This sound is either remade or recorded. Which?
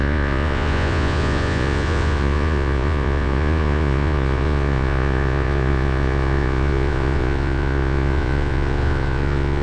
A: remade